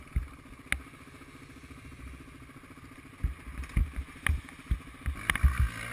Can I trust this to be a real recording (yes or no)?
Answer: yes